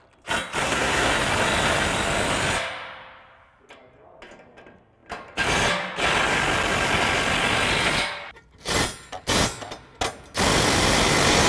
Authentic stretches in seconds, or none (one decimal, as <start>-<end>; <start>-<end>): 0.0-0.6; 1.1-11.5